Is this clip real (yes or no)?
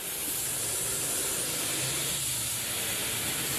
yes